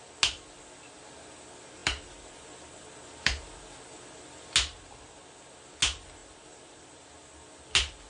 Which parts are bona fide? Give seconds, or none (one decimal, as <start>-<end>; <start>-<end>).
0.0-1.8; 2.7-4.7; 5.3-6.2; 7.1-8.1